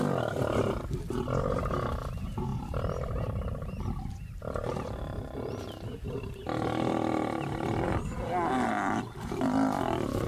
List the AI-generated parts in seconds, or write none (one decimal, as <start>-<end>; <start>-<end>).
2.5-6.3